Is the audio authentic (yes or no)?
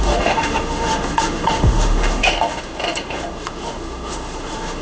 no